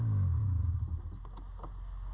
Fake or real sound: real